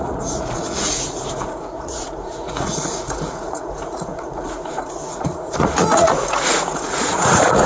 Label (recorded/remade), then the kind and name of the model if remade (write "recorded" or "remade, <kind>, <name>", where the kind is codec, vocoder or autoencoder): remade, vocoder, Vocos